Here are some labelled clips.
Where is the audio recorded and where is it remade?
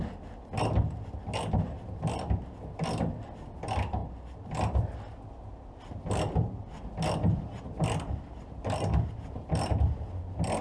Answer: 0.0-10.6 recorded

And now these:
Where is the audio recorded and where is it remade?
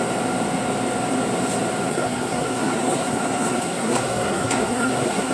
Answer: 0.0-1.9 recorded; 1.9-5.3 remade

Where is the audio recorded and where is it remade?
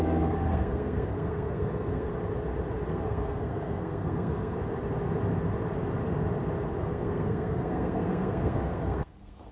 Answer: 0.0-2.1 remade; 2.1-2.9 recorded; 2.9-4.6 remade; 4.6-6.8 recorded; 6.8-9.5 remade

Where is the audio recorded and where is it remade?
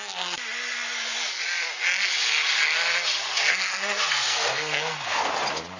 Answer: 0.0-3.5 recorded; 3.5-5.3 remade; 5.3-5.8 recorded